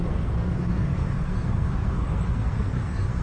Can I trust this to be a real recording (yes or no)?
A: no